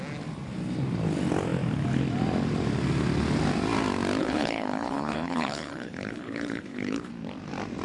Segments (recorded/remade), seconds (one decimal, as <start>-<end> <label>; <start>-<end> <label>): 0.0-4.2 recorded; 4.2-7.1 remade; 7.1-7.8 recorded